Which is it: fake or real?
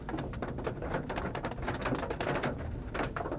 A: real